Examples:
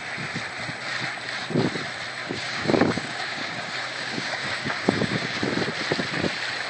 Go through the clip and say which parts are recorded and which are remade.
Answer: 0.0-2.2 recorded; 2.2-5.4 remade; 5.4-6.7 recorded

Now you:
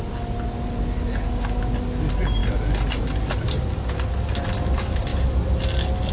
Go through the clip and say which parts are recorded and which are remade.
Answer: 0.0-6.1 recorded

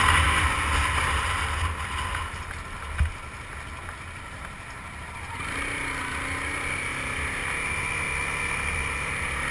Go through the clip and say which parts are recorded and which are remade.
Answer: 0.0-9.5 recorded

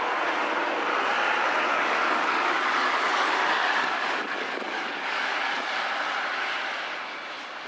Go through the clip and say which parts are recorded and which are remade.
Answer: 0.0-1.7 recorded; 1.7-5.7 remade; 5.7-7.7 recorded